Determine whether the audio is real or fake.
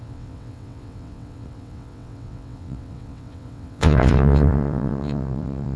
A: fake